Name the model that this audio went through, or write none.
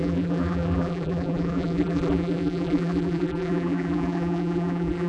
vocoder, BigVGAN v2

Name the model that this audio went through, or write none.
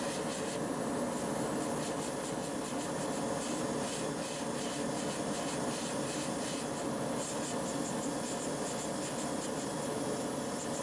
none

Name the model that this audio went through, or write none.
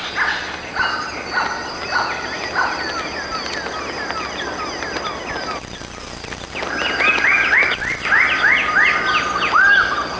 none